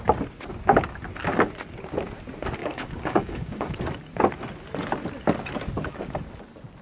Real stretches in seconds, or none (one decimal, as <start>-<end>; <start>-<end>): 0.0-2.6; 3.8-6.8